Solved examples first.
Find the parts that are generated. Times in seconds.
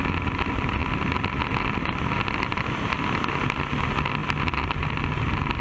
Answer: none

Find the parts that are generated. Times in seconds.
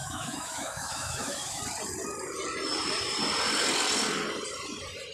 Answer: 0.0-1.6 (autoencoder, DAC-VAE)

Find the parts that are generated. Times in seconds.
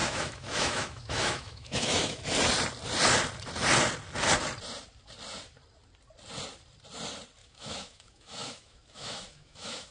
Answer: 0.0-2.2 (autoencoder, DAC-VAE); 7.4-9.9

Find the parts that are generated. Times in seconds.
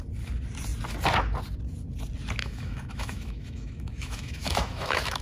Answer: 2.4-5.2 (autoencoder, DAC-VAE)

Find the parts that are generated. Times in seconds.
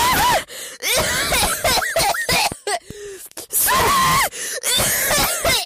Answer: 4.5-5.0 (autoencoder, DAC-VAE)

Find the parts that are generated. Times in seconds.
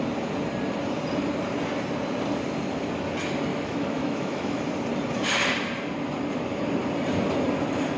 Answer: 3.5-4.6 (autoencoder, DAC-VAE)